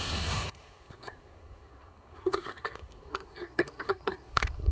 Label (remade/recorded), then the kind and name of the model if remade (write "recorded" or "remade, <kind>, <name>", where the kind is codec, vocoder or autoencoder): remade, codec, SNAC